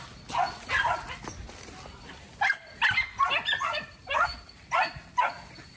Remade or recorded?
recorded